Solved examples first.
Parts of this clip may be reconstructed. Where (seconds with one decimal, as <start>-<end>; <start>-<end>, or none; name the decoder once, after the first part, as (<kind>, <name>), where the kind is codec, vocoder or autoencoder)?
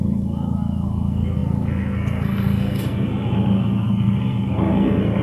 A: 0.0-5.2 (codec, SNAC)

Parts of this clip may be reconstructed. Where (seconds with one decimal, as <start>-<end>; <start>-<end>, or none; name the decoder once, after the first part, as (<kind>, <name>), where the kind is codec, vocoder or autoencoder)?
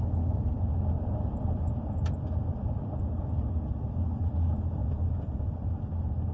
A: none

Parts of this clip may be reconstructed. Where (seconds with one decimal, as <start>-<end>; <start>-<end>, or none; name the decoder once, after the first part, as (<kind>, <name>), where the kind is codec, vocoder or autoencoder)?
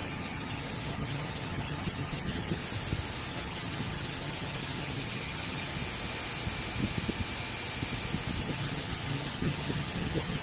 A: 0.0-2.6 (vocoder, HiFi-GAN); 3.3-5.7; 8.4-10.4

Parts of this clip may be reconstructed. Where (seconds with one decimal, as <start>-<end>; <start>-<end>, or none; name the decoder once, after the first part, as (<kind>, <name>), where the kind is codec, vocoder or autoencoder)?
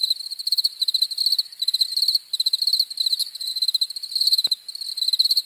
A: 0.0-1.9 (vocoder, BigVGAN v2); 5.1-5.5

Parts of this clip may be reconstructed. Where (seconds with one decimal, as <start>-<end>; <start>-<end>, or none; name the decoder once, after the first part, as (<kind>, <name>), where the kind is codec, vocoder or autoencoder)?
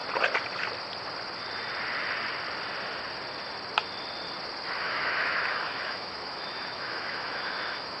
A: 4.8-8.0 (autoencoder, DAC-VAE)